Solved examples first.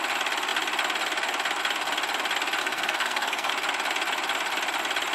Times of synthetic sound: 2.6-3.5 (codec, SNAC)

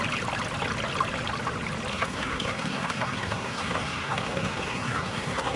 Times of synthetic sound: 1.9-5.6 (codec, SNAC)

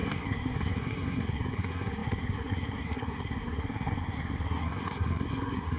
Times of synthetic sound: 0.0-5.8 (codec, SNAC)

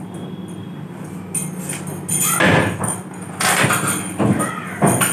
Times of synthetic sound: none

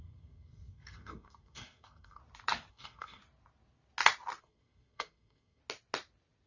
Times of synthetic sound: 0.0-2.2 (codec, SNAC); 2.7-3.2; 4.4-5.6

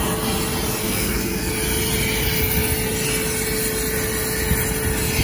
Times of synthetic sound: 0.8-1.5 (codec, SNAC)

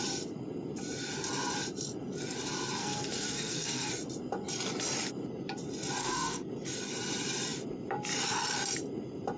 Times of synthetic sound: 2.8-3.9 (codec, SNAC); 6.0-6.5

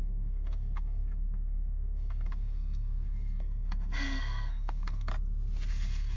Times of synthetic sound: 0.0-5.1 (codec, SNAC); 5.7-6.2